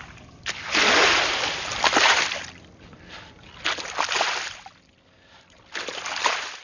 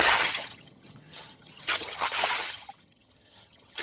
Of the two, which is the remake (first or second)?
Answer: second